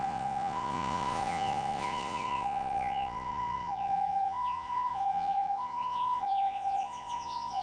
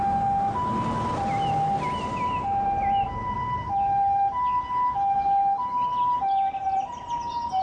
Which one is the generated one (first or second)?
first